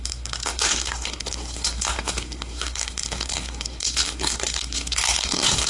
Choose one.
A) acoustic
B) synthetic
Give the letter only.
B